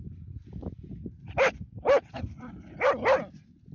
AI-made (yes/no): no